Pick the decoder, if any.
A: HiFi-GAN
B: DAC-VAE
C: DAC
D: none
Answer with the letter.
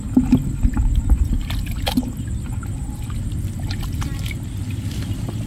D